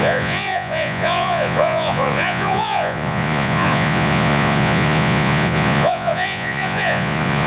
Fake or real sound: fake